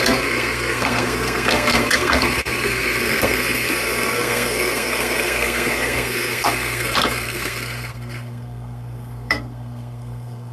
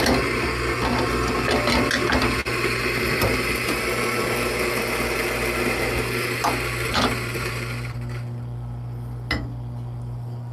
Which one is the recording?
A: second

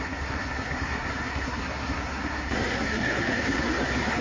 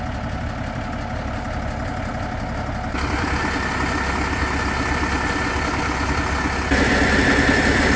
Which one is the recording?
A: second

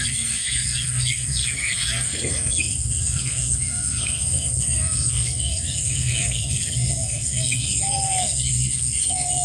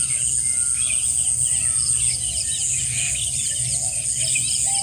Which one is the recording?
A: second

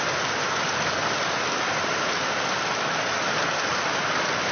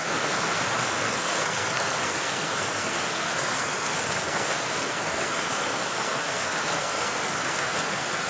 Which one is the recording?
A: first